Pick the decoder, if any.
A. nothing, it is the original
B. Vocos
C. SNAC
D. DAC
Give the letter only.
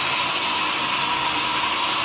A